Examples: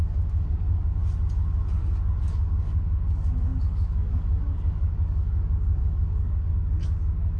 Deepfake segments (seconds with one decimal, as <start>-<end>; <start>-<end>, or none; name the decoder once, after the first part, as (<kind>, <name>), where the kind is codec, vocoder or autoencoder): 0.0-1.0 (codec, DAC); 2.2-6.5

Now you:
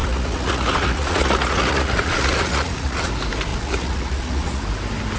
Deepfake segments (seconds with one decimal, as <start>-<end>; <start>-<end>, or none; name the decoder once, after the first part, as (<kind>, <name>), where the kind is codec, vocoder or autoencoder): 0.0-3.1 (vocoder, Vocos); 3.5-4.6

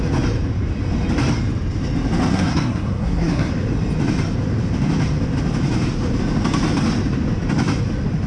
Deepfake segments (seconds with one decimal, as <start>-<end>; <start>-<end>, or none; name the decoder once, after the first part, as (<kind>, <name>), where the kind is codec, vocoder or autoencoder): 2.3-3.5 (codec, SNAC)